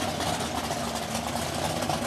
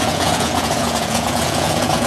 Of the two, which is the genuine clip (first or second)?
first